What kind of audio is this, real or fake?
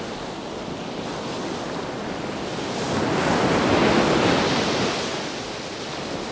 real